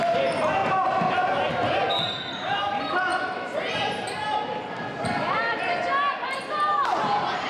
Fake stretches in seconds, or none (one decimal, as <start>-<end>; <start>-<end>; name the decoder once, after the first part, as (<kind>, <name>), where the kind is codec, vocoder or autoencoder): 0.0-0.6 (vocoder, BigVGAN v2); 1.5-3.1; 6.7-7.5